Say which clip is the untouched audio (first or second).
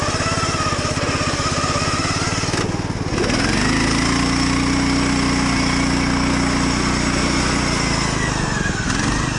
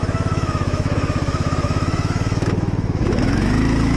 first